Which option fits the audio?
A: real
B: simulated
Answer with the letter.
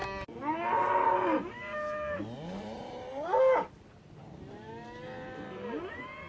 A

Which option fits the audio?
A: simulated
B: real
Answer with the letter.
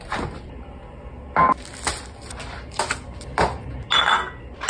B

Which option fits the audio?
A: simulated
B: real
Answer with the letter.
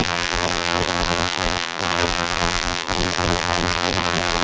A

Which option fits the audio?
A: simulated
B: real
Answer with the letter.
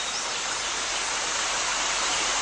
A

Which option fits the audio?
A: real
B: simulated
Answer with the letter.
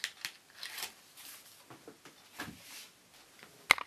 A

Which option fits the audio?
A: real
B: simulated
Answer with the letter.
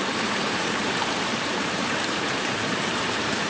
B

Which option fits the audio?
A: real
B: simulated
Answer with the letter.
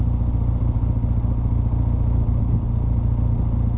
A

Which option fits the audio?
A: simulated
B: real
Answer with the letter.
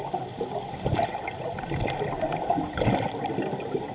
B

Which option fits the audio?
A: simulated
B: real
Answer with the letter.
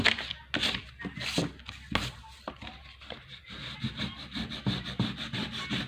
B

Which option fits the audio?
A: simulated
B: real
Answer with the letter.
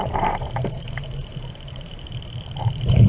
A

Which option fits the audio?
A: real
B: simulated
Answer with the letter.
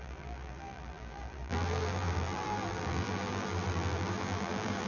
B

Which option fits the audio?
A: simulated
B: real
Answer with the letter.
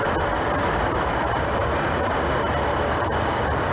B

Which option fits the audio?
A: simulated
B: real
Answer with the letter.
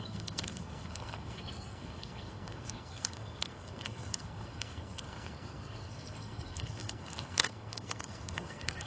A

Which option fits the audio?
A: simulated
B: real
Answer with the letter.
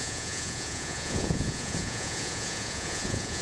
A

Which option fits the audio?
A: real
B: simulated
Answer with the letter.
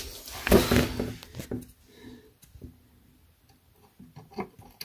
A